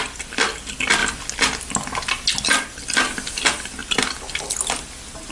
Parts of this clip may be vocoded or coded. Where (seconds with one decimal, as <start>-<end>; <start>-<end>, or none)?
none